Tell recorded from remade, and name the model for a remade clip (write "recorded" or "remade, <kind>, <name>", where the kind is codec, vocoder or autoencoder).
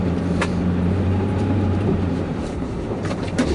remade, vocoder, BigVGAN v2